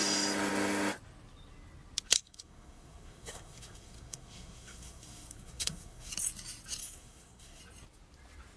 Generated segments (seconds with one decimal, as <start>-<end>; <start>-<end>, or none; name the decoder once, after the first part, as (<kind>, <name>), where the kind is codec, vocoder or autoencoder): 2.1-6.1 (codec, SNAC); 6.8-7.6